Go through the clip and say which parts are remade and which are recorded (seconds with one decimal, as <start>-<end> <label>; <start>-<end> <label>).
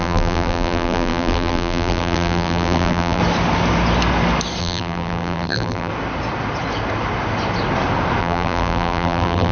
0.0-3.2 remade; 3.2-4.6 recorded; 4.6-5.9 remade; 5.9-8.2 recorded; 8.2-9.5 remade